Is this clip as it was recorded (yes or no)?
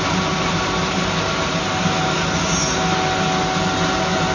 yes